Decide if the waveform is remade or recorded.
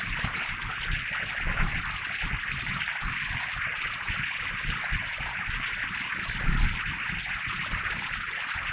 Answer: recorded